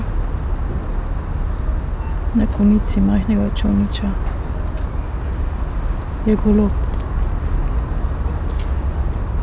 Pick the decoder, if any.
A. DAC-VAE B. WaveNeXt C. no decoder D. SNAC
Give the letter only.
C